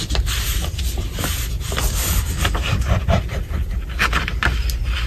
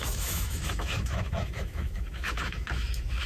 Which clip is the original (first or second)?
first